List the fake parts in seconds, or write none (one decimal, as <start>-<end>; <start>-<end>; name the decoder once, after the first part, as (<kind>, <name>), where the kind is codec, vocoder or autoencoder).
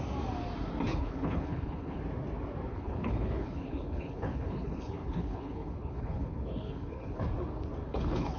0.9-2.0 (codec, HILCodec); 2.7-7.2; 7.8-8.4